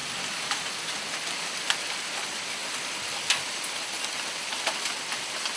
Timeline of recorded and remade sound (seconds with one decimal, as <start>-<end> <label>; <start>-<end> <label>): 0.0-5.6 recorded